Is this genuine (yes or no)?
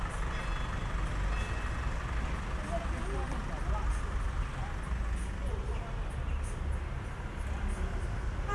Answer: yes